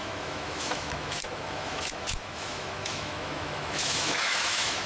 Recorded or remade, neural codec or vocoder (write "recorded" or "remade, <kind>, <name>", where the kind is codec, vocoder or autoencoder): remade, autoencoder, DAC-VAE